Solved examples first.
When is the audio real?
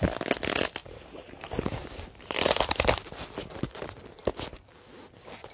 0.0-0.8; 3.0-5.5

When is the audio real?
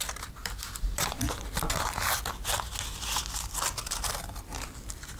0.0-0.4; 1.3-5.2